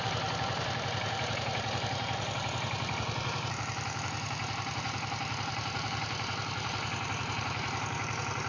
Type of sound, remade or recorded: remade